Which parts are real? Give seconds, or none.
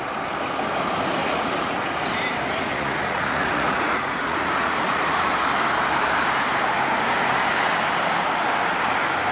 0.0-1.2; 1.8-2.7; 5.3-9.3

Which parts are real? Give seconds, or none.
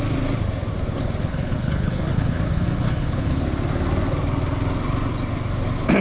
0.0-1.2; 3.4-6.0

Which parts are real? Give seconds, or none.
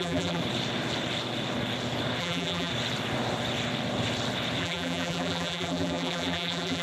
0.4-2.2; 2.7-4.6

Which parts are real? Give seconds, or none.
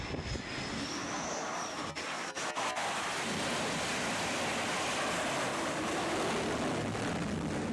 0.0-1.0; 1.7-2.8; 3.3-5.5; 6.1-7.7